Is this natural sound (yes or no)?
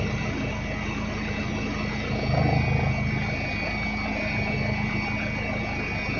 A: yes